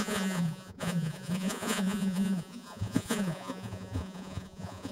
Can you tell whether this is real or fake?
fake